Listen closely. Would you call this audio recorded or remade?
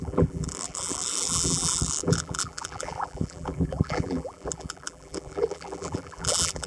remade